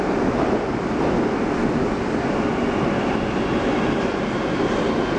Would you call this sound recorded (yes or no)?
yes